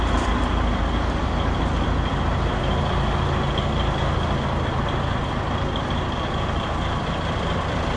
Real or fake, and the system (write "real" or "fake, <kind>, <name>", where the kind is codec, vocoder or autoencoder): fake, vocoder, BigVGAN v2